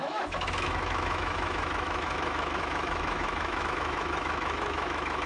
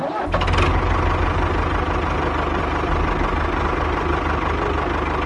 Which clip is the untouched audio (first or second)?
second